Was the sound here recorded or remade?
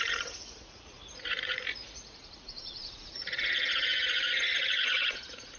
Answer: remade